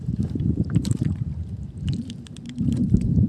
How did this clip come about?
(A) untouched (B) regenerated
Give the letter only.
B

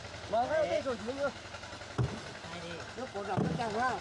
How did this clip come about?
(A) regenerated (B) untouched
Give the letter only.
B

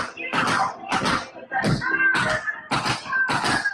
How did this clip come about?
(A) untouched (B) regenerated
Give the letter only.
A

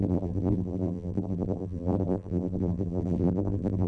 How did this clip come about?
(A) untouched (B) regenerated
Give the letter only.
B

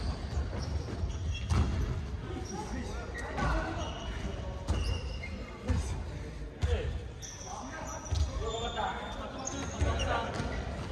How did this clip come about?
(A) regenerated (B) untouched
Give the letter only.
B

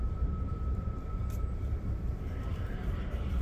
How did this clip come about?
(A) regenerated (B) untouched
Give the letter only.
A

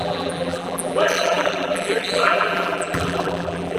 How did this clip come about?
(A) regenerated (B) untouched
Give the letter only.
A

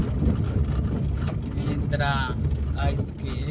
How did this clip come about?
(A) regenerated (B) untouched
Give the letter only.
B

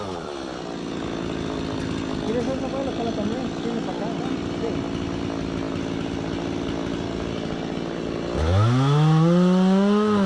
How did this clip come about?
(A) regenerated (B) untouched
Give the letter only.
B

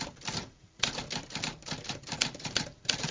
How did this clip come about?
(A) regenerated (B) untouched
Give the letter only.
A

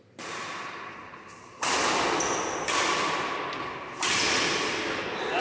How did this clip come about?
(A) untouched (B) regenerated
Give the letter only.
A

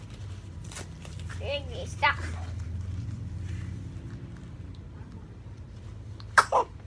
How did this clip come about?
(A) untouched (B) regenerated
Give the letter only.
B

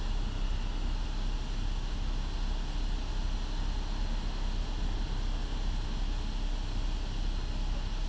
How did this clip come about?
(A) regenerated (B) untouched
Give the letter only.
B